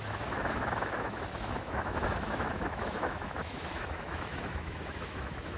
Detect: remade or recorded remade